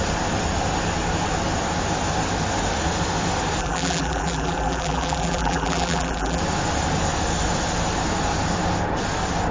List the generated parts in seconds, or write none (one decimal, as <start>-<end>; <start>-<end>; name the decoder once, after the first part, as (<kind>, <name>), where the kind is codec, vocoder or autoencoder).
3.6-6.4 (vocoder, BigVGAN v2)